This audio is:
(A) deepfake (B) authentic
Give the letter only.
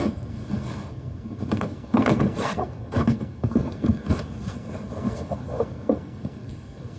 A